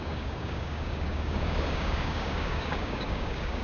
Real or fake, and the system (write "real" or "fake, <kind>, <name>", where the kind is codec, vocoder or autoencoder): fake, codec, DAC